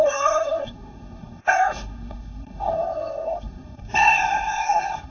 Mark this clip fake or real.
fake